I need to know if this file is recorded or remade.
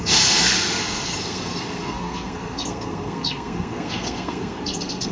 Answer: remade